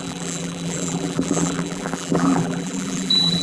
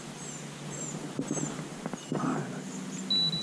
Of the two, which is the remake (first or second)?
first